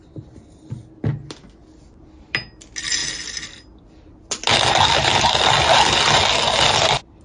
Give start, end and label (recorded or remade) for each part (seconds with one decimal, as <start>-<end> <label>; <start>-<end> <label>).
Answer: 0.0-7.2 recorded